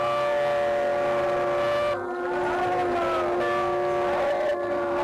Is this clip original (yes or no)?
yes